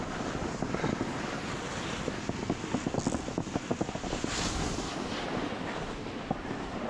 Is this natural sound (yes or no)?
yes